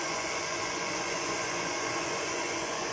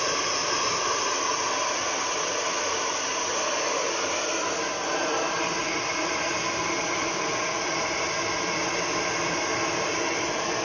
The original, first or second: second